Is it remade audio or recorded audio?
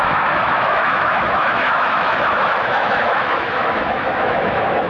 remade